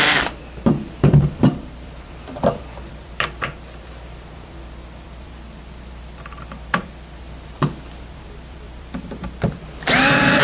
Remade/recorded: remade